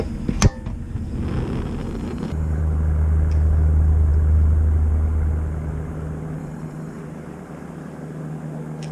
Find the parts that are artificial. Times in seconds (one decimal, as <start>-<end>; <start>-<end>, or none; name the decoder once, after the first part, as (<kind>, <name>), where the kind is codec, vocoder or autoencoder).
1.8-2.6 (vocoder, BigVGAN v2); 6.4-7.0